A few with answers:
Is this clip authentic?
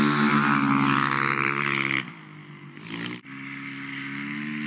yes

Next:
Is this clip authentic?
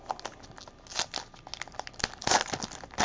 yes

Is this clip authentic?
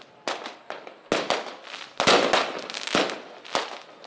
yes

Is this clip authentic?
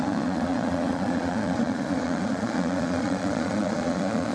no